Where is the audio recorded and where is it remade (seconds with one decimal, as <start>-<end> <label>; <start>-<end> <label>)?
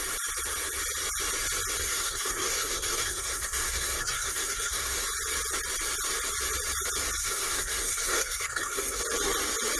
0.0-1.8 recorded; 1.8-5.0 remade; 5.0-7.2 recorded; 7.2-9.0 remade; 9.0-9.8 recorded